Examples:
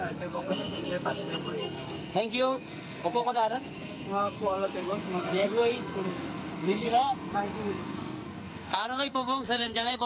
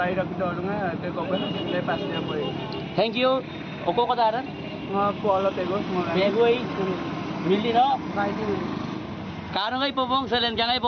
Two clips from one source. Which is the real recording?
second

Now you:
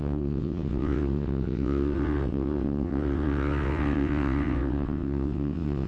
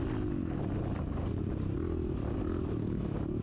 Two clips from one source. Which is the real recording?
second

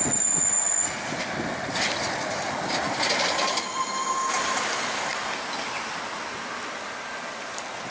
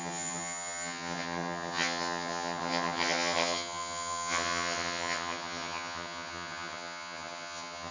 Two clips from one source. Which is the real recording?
first